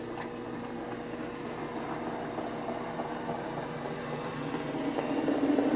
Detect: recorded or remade recorded